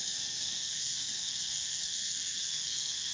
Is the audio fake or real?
fake